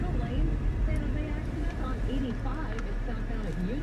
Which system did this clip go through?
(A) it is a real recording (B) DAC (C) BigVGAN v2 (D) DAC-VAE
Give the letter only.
A